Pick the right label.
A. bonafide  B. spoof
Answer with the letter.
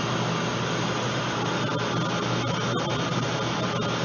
A